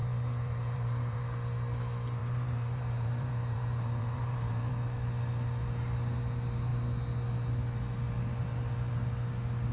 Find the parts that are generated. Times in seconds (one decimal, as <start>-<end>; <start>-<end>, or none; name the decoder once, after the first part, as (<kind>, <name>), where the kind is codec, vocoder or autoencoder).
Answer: 0.0-1.2 (vocoder, BigVGAN v2); 2.2-4.7